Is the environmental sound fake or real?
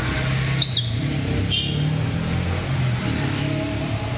real